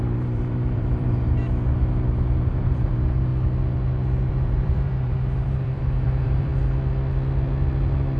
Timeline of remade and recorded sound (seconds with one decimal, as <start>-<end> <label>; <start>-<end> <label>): 0.0-1.4 remade; 1.4-2.5 recorded; 2.5-3.3 remade; 3.3-4.3 recorded; 4.3-6.5 remade; 6.5-8.2 recorded